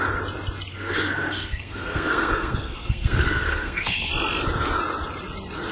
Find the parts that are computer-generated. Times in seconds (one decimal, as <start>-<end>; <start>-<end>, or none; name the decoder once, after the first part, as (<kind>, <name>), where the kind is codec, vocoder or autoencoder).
0.7-4.1 (codec, SNAC)